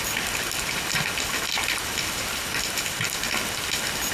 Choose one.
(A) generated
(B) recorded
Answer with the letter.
B